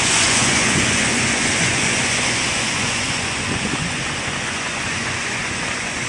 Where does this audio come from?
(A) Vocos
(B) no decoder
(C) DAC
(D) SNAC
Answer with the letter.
A